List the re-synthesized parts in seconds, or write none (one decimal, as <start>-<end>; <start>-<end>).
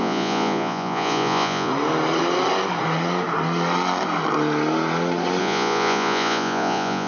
0.0-1.7; 5.4-7.1